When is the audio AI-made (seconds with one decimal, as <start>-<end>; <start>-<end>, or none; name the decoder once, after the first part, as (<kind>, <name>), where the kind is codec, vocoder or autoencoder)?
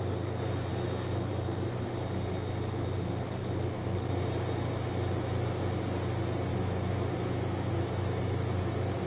6.5-7.7 (autoencoder, DAC-VAE)